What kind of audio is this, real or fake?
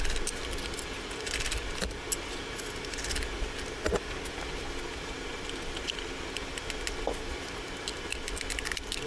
real